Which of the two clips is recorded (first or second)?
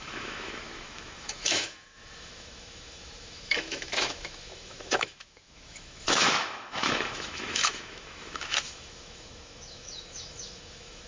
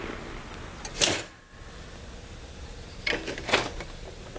second